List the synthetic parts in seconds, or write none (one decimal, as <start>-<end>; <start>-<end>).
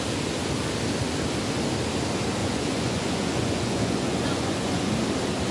2.4-4.9